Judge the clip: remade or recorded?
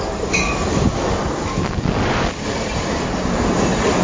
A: recorded